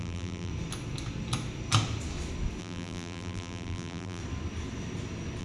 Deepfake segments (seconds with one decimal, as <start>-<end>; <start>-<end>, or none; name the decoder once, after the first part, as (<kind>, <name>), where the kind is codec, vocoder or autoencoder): 0.0-0.5 (vocoder, BigVGAN v2); 2.6-4.2